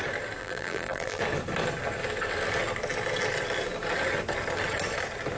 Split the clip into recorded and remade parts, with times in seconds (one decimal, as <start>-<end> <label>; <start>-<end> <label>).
0.0-0.4 recorded; 0.4-1.2 remade; 1.2-5.4 recorded